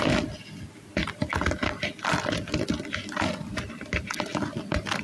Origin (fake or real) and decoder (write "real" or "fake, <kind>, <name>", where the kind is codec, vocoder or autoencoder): real